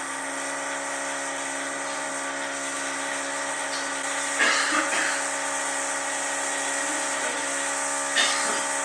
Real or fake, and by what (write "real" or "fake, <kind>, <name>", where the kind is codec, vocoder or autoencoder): real